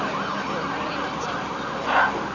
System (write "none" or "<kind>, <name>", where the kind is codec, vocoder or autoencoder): none